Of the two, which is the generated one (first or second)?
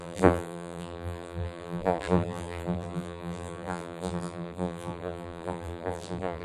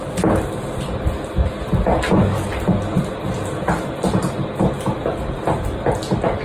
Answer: first